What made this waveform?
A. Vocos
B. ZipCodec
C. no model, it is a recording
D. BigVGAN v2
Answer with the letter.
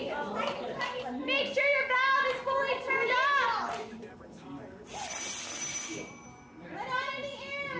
C